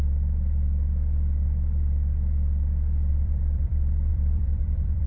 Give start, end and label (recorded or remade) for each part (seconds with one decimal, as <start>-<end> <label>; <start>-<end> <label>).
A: 0.0-3.1 recorded; 3.1-5.1 remade